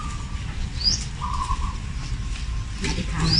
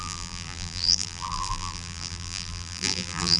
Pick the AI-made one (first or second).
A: second